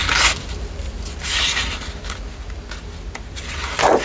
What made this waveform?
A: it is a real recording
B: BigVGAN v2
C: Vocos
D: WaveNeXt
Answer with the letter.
A